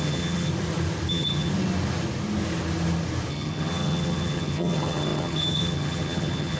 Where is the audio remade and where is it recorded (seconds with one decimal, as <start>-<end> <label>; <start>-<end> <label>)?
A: 0.0-0.5 remade; 0.5-1.1 recorded; 1.1-1.5 remade; 1.5-3.3 recorded; 3.3-6.6 remade